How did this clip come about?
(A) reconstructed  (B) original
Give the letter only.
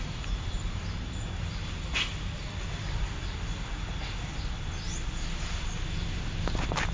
B